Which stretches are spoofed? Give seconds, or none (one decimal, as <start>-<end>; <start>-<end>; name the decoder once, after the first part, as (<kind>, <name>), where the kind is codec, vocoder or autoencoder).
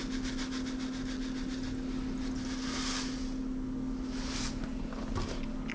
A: none